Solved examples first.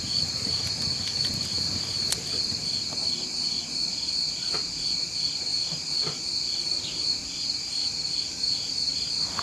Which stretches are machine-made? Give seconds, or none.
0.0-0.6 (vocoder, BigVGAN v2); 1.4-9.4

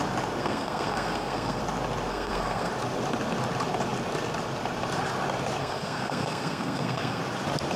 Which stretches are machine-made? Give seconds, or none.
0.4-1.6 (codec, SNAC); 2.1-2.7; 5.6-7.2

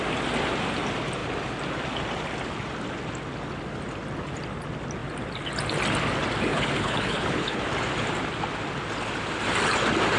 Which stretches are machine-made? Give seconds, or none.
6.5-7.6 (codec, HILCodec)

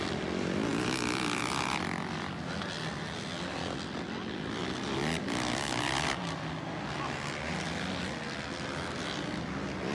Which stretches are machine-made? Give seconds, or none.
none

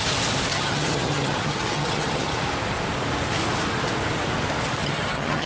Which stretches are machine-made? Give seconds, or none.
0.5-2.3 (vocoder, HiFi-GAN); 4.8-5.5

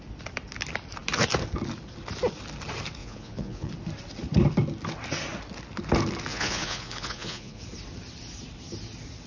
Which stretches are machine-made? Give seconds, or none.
3.0-3.7 (vocoder, Vocos); 6.3-7.6

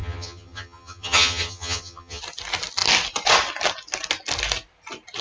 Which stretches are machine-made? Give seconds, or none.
0.0-2.2 (vocoder, HiFi-GAN)

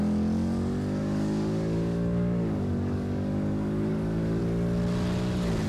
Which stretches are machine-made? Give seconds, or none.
1.0-4.4 (codec, DAC)